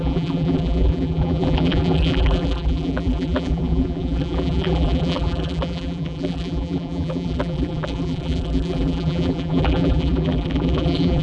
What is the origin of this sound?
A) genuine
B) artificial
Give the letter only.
B